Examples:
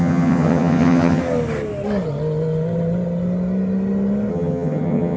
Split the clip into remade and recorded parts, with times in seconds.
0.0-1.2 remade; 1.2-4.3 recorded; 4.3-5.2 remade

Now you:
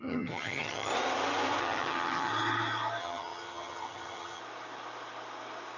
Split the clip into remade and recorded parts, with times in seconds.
0.0-0.9 remade; 0.9-1.6 recorded; 1.6-2.3 remade; 2.3-3.0 recorded; 3.0-4.4 remade; 4.4-5.8 recorded

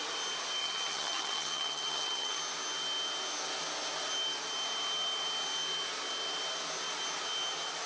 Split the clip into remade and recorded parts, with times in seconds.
0.0-0.6 recorded; 0.6-2.4 remade; 2.4-7.9 recorded

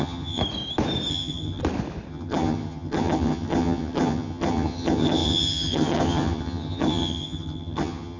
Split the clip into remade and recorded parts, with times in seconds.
0.0-0.4 remade; 0.4-1.1 recorded; 1.1-1.6 remade; 1.6-2.1 recorded; 2.1-8.2 remade